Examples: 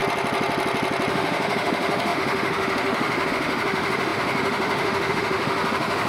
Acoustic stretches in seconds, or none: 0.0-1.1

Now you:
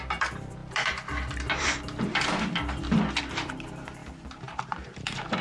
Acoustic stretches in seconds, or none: 4.0-4.6

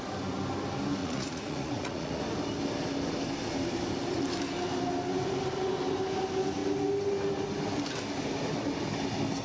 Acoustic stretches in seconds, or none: 0.0-1.0; 2.2-9.4